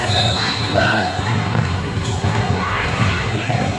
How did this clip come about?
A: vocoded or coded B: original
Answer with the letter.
A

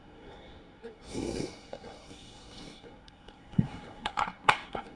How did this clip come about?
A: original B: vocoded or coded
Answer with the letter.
B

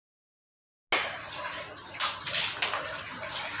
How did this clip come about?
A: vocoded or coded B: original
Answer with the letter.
B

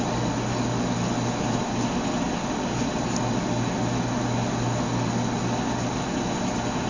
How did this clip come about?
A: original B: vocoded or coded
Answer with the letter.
A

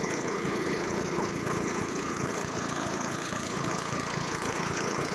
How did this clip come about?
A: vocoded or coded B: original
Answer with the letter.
A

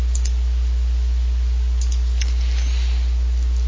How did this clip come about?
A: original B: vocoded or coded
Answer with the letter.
A